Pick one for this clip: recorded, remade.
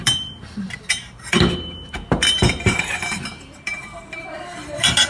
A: remade